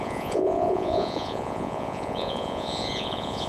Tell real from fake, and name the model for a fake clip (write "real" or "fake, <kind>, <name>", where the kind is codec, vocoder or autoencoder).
fake, vocoder, Vocos